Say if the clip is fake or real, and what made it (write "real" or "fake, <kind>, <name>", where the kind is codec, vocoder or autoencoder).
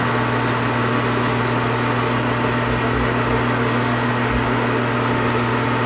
real